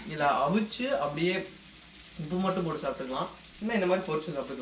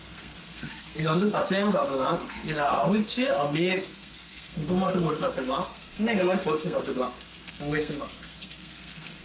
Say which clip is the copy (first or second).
second